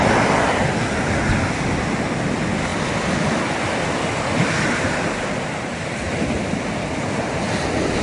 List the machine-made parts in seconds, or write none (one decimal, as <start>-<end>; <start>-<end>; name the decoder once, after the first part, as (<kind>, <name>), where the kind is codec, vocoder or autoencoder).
none